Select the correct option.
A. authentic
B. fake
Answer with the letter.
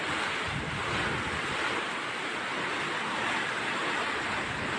A